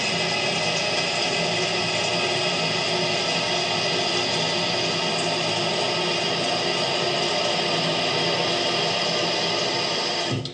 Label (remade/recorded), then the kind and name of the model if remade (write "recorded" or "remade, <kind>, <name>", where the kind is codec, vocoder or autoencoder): recorded